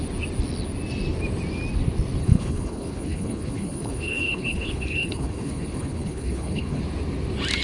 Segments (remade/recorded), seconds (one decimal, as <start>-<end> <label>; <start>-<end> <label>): 0.0-2.2 recorded; 2.2-6.8 remade; 6.8-7.6 recorded

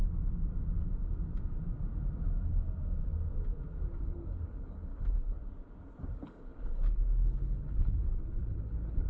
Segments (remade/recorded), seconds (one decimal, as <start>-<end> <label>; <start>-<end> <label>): 0.0-4.0 recorded; 4.0-5.4 remade; 5.4-6.0 recorded; 6.0-9.1 remade

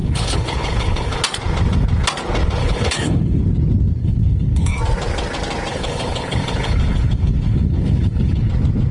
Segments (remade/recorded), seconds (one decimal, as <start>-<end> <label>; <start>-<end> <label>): 0.0-1.2 remade; 1.2-2.6 recorded; 2.6-3.4 remade; 3.4-4.0 recorded; 4.0-4.8 remade; 4.8-5.7 recorded; 5.7-8.5 remade; 8.5-8.9 recorded

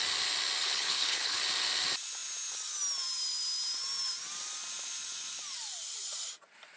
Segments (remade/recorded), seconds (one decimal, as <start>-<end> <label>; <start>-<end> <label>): 0.0-0.6 recorded; 0.6-1.4 remade; 1.4-6.8 recorded

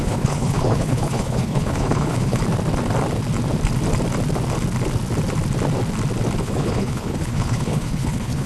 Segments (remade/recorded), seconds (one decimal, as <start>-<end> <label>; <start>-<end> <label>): 0.0-2.4 remade; 2.4-6.4 recorded; 6.4-8.5 remade

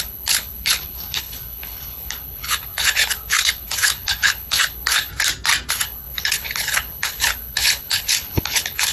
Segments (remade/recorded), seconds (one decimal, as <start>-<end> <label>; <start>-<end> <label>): 0.0-5.1 remade; 5.1-5.7 recorded; 5.7-8.9 remade

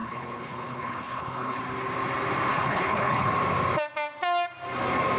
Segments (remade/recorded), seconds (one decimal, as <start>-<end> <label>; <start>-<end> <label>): 0.0-1.6 remade; 1.6-2.5 recorded; 2.5-3.3 remade; 3.3-5.2 recorded